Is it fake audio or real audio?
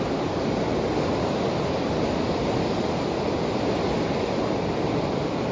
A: real